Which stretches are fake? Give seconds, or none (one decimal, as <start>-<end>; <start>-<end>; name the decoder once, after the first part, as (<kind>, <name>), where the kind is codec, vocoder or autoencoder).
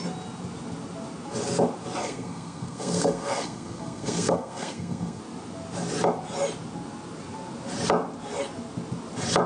2.0-5.2 (codec, SNAC)